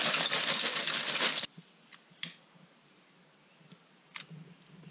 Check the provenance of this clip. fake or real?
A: real